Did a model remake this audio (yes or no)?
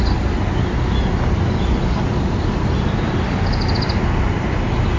no